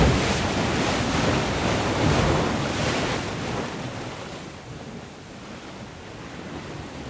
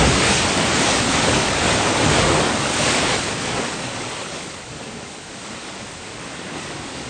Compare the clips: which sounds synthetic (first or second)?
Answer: second